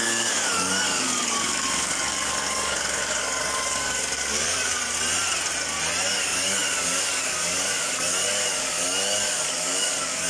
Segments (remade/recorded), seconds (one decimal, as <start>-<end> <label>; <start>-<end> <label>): 0.0-4.8 remade; 4.8-6.1 recorded; 6.1-10.3 remade